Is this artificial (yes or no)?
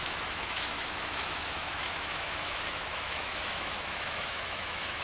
yes